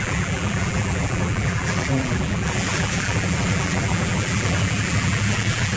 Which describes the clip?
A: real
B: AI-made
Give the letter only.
B